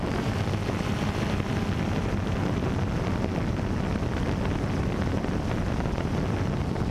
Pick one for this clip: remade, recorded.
recorded